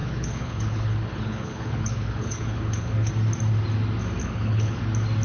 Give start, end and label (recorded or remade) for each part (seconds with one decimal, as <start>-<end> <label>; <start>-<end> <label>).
0.0-3.1 remade; 3.1-4.2 recorded; 4.2-4.8 remade; 4.8-5.2 recorded